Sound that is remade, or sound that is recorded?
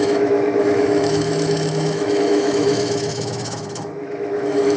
remade